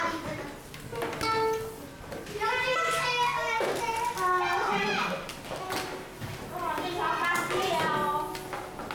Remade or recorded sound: recorded